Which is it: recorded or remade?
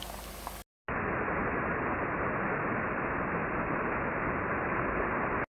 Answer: recorded